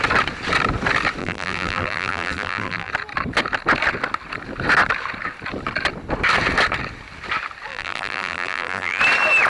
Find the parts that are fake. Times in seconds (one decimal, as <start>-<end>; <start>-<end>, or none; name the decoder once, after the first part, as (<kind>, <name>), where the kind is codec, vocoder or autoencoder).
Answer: 1.2-2.9 (vocoder, BigVGAN v2); 7.7-9.0